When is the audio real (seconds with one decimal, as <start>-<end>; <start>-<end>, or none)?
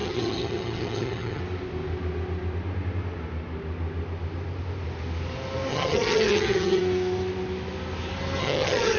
1.4-5.7; 6.8-8.4